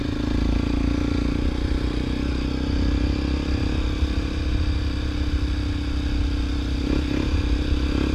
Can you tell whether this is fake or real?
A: real